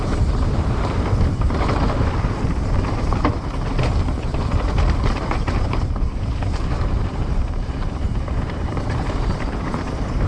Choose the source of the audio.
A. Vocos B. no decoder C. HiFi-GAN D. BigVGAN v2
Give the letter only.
D